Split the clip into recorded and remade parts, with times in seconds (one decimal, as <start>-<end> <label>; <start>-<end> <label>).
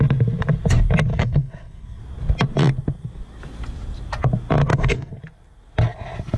0.0-1.1 recorded; 1.1-2.0 remade; 2.0-4.7 recorded; 4.7-5.2 remade; 5.2-6.4 recorded